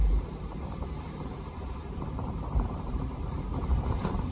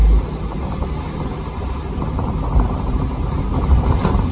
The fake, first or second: first